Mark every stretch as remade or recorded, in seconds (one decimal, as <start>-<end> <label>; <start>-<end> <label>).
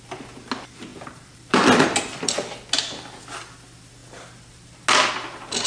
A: 0.0-0.9 recorded; 0.9-2.7 remade; 2.7-5.7 recorded